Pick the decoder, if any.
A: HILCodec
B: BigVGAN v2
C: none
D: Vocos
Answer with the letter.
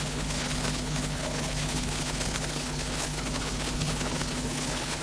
A